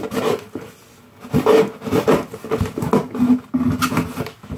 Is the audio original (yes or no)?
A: yes